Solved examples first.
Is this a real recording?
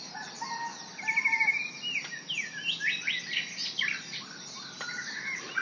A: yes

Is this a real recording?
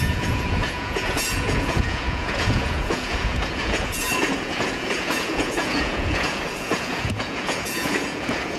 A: no